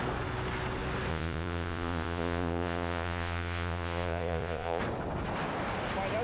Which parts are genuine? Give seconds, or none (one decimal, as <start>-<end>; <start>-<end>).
0.0-1.1; 4.8-6.2